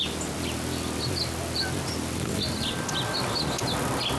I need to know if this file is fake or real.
real